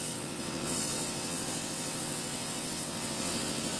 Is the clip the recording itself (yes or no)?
no